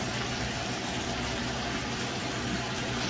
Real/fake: real